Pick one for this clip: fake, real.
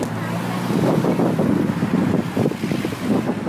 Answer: real